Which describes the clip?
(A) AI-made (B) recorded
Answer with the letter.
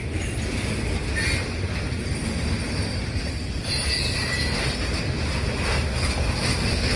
B